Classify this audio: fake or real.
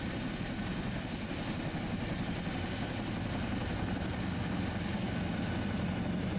real